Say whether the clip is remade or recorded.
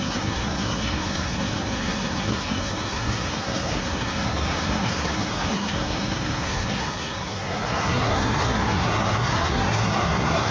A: remade